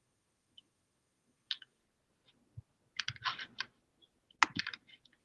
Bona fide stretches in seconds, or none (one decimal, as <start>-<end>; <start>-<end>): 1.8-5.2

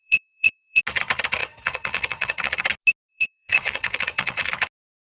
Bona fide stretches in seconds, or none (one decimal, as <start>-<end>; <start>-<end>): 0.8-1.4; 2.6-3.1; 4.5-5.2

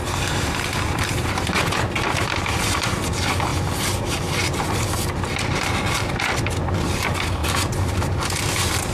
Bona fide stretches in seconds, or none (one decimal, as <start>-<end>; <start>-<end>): 0.0-3.5; 6.5-8.9

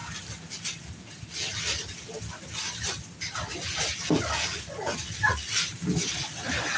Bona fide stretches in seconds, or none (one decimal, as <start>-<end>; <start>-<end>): 0.0-6.8

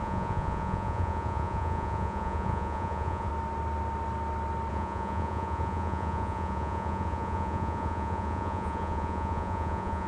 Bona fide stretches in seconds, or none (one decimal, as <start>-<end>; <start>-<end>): 3.3-4.7

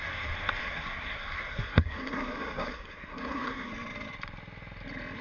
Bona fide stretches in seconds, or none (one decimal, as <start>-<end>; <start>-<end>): 0.0-0.6; 3.7-5.2

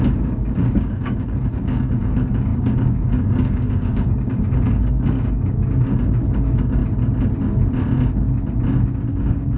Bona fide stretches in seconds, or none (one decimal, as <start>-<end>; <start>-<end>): 6.8-9.1